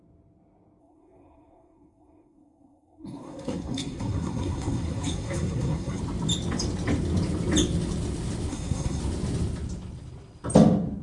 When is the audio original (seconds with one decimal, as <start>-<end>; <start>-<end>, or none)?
0.0-0.8; 6.0-8.5; 9.0-11.0